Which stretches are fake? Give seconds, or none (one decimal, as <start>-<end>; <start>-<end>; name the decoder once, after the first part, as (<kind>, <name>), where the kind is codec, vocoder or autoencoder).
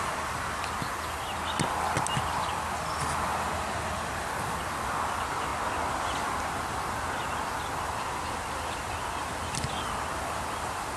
none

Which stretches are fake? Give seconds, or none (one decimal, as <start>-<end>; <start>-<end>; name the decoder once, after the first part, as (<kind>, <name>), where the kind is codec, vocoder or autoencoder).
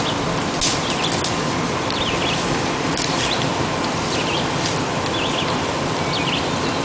none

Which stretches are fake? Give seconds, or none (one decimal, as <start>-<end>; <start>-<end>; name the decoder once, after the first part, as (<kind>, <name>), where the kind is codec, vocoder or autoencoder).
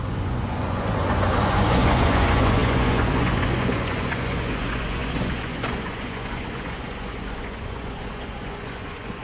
0.0-9.2 (vocoder, Vocos)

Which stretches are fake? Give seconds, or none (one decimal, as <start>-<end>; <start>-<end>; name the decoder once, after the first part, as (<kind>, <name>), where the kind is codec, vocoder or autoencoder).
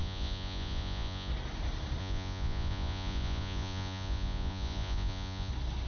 0.0-1.3 (vocoder, Vocos); 2.0-5.5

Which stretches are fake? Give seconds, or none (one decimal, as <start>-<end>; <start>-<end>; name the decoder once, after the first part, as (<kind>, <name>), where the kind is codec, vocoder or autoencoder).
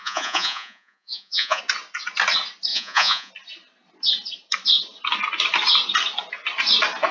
0.0-1.6 (vocoder, Vocos); 2.7-3.3